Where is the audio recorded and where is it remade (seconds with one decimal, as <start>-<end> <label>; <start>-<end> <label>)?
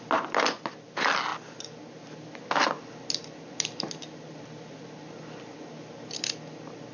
0.0-6.9 recorded